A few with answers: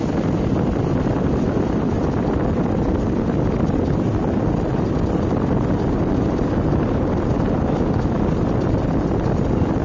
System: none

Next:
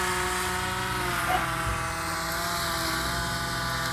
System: none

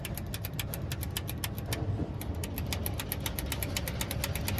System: none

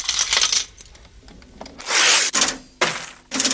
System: none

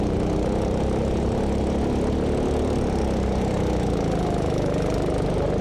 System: none